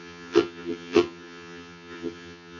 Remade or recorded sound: remade